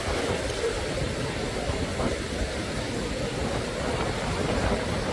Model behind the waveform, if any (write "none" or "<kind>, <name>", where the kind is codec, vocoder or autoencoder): none